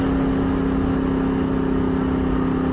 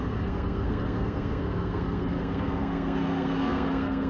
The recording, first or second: first